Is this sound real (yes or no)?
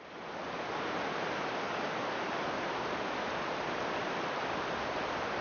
yes